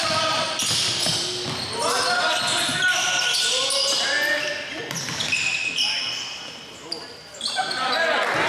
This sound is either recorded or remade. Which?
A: recorded